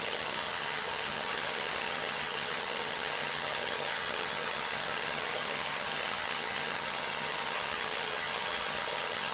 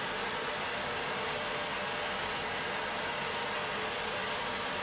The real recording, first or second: second